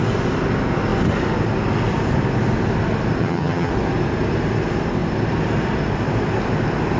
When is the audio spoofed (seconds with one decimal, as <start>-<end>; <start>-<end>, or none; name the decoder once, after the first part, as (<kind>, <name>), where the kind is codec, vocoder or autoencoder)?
3.2-3.7 (vocoder, HiFi-GAN)